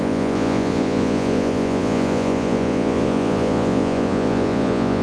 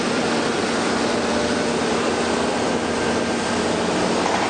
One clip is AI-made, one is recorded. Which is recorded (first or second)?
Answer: second